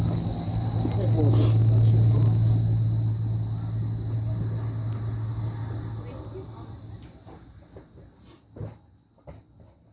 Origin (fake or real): real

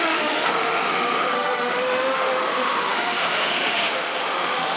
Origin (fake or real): fake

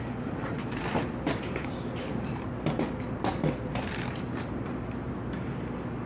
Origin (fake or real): fake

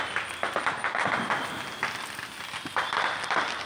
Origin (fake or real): real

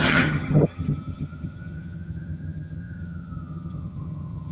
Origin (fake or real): fake